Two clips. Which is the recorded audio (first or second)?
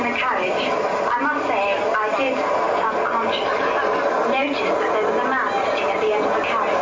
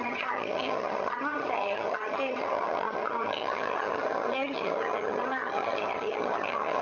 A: first